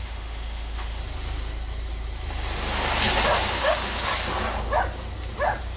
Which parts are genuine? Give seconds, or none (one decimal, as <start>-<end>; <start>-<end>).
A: 1.0-3.5; 4.1-5.8